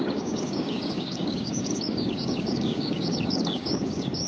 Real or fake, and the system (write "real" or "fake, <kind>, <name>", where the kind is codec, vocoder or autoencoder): fake, codec, DAC